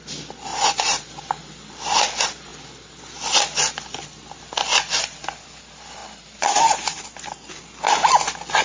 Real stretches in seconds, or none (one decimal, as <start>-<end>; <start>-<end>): 0.0-0.5; 1.1-6.0; 7.0-8.6